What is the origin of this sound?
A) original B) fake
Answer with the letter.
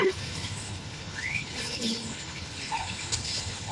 B